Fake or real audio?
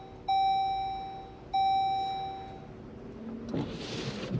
real